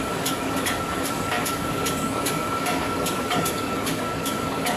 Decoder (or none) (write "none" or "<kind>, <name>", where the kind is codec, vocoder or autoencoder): codec, DAC